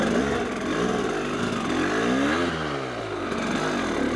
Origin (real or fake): real